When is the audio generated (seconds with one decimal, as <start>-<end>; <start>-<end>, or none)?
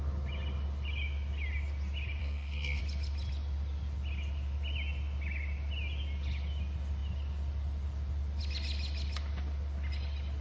2.2-2.8